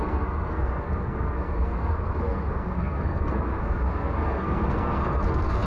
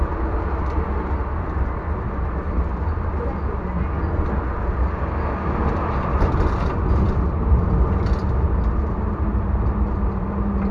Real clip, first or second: second